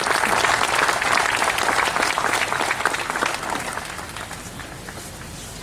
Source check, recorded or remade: recorded